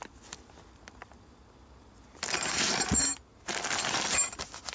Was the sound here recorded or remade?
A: recorded